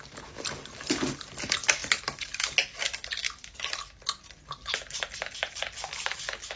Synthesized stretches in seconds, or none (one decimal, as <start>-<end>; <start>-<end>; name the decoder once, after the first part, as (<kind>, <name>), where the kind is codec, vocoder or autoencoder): none